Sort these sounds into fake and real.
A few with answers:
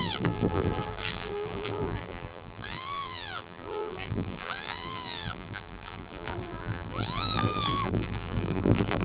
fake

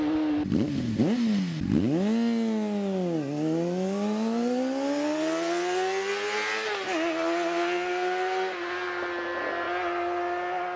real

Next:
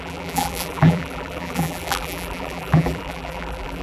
fake